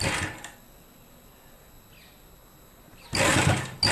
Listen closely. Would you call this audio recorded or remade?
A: recorded